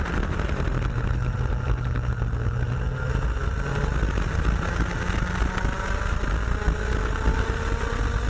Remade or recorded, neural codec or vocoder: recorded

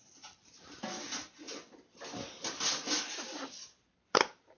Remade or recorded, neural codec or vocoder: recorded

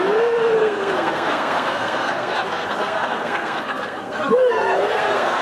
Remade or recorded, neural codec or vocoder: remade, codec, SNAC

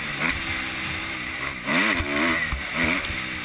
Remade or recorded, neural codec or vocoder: recorded